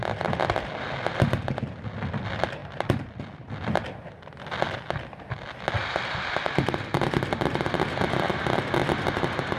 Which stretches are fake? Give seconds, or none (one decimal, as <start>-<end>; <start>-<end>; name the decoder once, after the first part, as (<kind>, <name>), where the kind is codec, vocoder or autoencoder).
none